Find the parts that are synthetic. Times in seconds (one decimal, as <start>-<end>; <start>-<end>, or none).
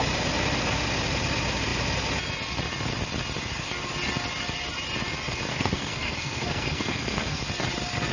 5.5-7.4